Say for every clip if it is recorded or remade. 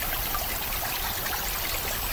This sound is recorded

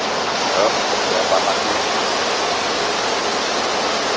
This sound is recorded